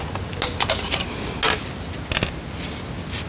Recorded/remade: recorded